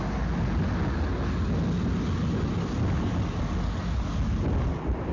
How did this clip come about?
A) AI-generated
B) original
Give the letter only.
B